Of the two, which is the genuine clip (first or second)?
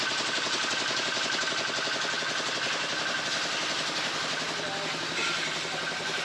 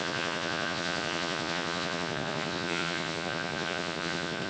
first